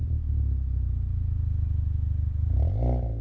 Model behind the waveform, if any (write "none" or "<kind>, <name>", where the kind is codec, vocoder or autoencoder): none